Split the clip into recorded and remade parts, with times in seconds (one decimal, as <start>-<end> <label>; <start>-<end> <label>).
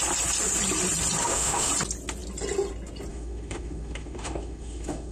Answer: 0.0-1.2 recorded; 1.2-1.7 remade; 1.7-3.1 recorded; 3.1-5.1 remade